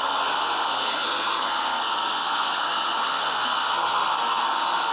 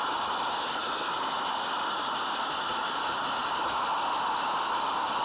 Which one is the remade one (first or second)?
first